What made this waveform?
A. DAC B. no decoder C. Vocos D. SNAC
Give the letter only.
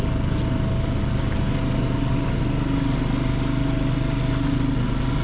B